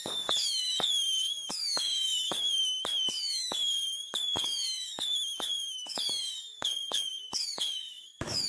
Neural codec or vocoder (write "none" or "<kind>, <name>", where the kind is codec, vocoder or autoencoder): codec, DAC